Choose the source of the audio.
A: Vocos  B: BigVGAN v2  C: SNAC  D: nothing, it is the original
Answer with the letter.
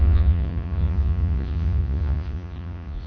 A